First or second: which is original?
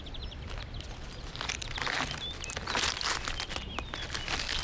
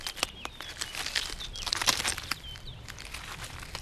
first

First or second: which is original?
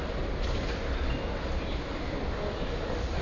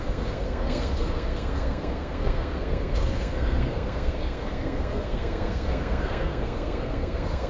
first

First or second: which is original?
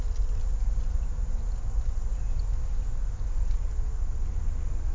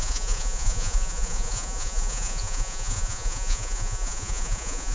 first